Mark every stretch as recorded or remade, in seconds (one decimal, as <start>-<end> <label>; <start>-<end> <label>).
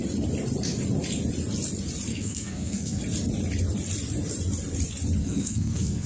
0.0-2.1 recorded; 2.1-3.0 remade; 3.0-5.2 recorded; 5.2-6.1 remade